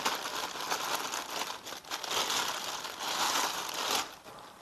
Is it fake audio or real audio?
real